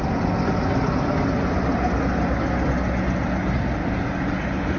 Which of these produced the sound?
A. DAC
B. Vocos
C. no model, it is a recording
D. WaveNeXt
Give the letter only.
C